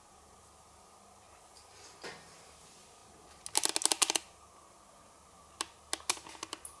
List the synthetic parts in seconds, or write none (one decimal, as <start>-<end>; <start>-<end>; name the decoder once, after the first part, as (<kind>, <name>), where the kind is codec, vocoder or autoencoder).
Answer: none